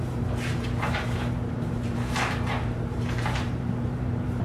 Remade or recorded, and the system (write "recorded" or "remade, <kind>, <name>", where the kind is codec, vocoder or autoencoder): remade, vocoder, BigVGAN v2